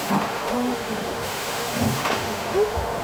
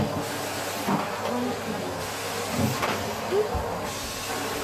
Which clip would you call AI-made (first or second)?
first